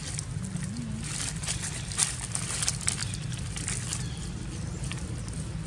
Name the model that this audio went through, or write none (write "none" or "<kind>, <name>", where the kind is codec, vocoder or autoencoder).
none